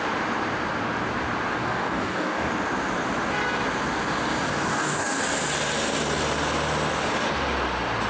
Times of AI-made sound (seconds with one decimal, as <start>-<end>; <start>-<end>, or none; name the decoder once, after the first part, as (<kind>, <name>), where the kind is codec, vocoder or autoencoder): 1.6-2.5 (codec, DAC); 4.5-5.2